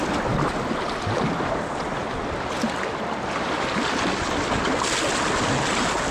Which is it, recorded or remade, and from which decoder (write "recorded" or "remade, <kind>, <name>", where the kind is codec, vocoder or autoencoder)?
recorded